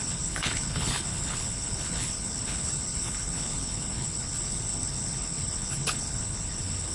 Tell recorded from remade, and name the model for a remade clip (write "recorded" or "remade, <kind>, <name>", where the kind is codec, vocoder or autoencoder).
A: remade, codec, HILCodec